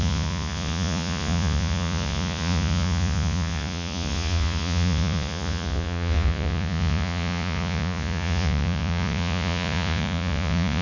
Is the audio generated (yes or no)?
yes